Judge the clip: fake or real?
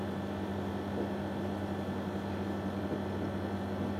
real